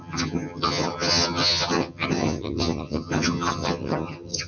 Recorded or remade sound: remade